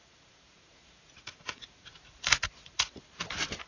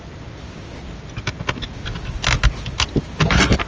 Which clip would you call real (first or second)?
second